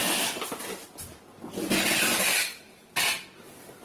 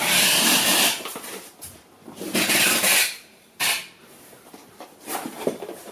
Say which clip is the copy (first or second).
second